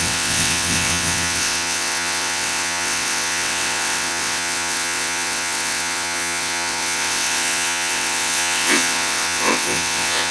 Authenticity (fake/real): fake